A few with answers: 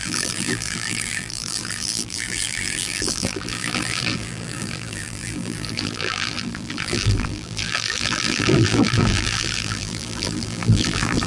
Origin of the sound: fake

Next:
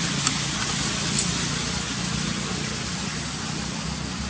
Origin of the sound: real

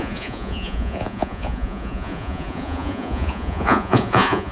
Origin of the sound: fake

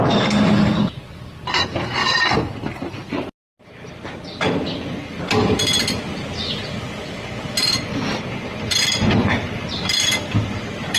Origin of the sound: real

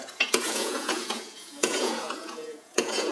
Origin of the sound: fake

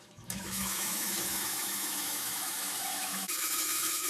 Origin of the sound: fake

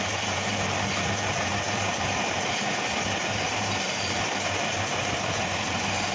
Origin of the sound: fake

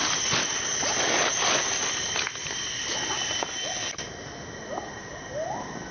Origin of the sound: real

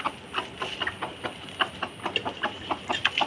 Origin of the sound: real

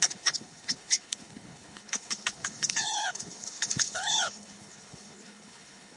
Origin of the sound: fake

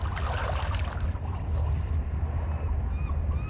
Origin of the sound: real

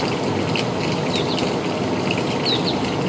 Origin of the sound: real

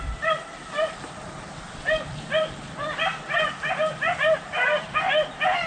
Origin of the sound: fake